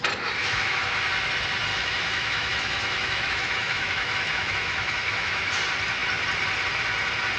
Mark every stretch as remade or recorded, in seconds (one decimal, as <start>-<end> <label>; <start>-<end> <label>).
0.0-0.4 recorded; 0.4-1.0 remade; 1.0-1.7 recorded; 1.7-5.5 remade; 5.5-7.4 recorded